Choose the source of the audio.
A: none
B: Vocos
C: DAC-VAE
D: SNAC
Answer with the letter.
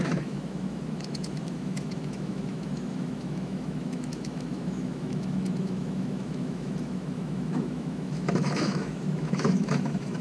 C